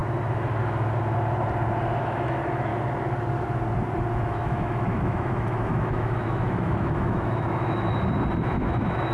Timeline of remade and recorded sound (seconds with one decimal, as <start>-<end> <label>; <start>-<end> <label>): 0.0-2.0 recorded; 2.0-2.7 remade; 2.7-4.1 recorded; 4.1-7.9 remade; 7.9-8.4 recorded; 8.4-9.1 remade